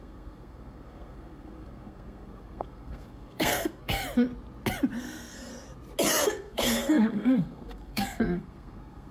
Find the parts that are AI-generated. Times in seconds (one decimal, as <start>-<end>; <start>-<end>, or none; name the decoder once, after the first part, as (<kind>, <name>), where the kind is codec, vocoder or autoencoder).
0.0-4.0 (codec, SNAC); 5.0-5.5; 6.2-9.1